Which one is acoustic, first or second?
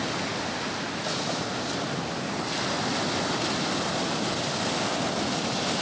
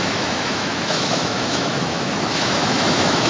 first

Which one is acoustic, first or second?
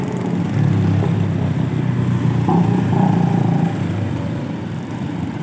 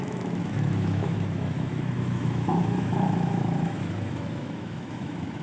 first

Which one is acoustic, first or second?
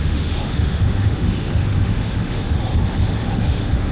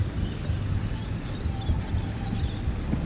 second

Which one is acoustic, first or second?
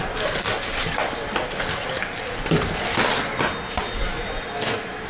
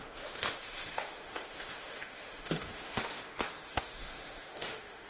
first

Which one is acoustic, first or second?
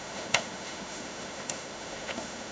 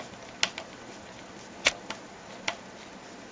second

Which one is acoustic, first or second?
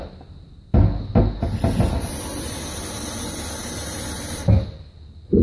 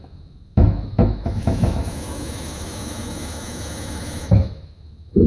first